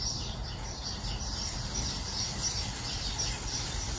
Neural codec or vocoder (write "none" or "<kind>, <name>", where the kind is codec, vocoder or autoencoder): none